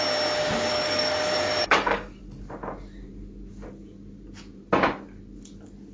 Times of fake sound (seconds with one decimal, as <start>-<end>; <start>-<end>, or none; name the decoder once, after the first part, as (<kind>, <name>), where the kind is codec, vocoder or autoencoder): 0.7-2.2 (codec, DAC)